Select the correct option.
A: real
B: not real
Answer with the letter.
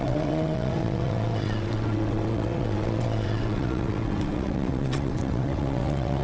B